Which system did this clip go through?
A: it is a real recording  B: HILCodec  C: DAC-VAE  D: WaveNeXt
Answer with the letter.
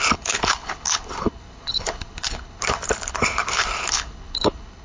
B